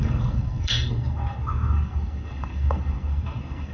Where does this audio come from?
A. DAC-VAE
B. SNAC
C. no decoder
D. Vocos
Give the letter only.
B